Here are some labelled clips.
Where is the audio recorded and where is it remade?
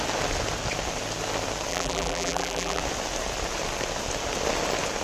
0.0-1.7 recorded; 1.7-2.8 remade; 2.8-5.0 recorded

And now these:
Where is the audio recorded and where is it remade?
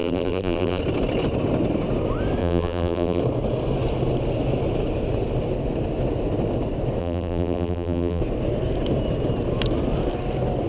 0.0-0.8 remade; 0.8-2.4 recorded; 2.4-3.2 remade; 3.2-7.0 recorded; 7.0-8.2 remade; 8.2-10.7 recorded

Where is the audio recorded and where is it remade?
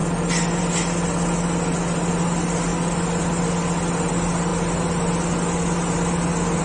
0.0-6.6 recorded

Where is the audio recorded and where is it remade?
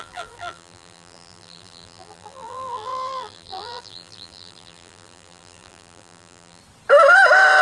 0.0-6.6 remade; 6.6-7.6 recorded